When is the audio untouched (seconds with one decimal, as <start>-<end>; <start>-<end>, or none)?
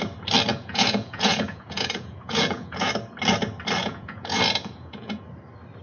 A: 0.0-0.5; 2.9-3.8; 5.2-5.8